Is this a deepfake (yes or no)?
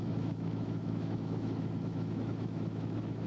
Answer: yes